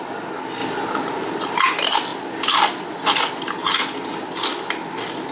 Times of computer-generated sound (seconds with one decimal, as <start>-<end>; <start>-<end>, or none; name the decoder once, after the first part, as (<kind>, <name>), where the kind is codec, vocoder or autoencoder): none